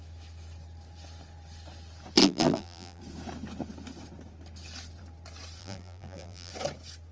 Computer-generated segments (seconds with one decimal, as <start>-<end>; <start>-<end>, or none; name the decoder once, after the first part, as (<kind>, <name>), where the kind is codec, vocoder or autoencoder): 2.2-3.0 (vocoder, BigVGAN v2); 5.6-6.5